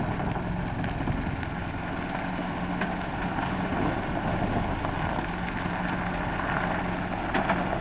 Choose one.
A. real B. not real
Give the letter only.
A